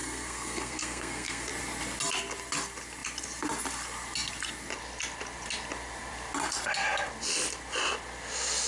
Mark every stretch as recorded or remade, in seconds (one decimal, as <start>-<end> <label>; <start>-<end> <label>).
0.0-1.5 remade; 1.5-8.7 recorded